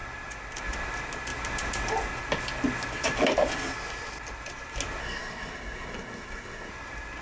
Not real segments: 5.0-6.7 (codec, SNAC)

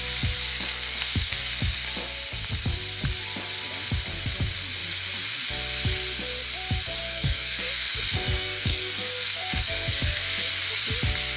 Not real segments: 0.5-1.5 (codec, SNAC); 7.0-10.5

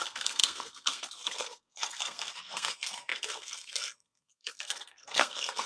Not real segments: 0.0-5.7 (codec, SNAC)